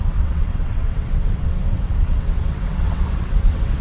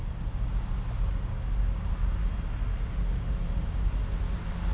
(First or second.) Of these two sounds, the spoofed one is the first